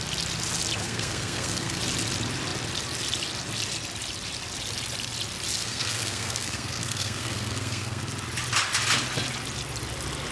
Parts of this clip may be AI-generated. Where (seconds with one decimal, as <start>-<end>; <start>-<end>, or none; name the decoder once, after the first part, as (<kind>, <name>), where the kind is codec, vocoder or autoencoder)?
0.8-1.8 (codec, SNAC); 5.6-8.0